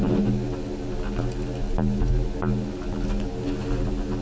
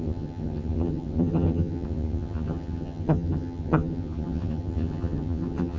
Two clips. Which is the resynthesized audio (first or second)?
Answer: second